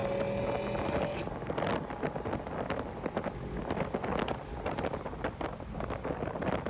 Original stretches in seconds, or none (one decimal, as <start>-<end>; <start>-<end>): 0.0-6.7